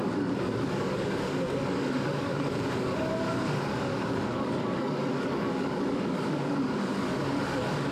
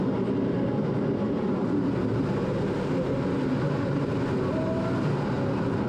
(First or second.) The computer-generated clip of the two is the first